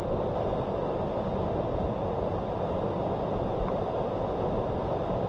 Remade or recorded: recorded